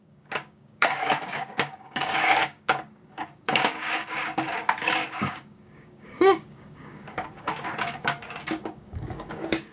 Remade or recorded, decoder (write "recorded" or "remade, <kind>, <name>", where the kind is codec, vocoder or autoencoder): remade, codec, DAC